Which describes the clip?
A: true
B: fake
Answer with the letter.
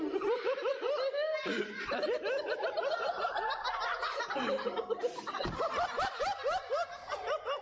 B